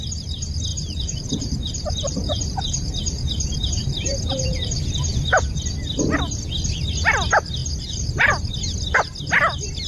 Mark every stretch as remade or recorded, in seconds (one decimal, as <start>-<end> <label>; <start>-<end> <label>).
0.0-0.7 recorded; 0.7-5.6 remade; 5.6-7.6 recorded; 7.6-8.3 remade; 8.3-9.9 recorded